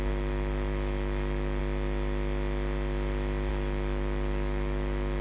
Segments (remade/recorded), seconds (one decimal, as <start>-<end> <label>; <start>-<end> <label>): 0.0-1.6 remade; 1.6-3.5 recorded; 3.5-5.2 remade